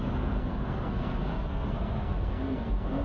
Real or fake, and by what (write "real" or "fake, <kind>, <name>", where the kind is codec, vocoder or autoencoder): fake, codec, SNAC